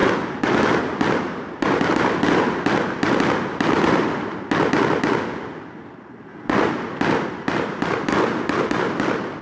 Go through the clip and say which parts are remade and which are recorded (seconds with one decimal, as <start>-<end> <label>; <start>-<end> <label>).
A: 0.0-9.4 recorded